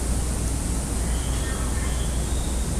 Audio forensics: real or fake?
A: real